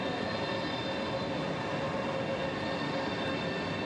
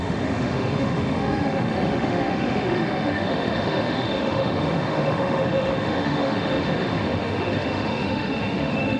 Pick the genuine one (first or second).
first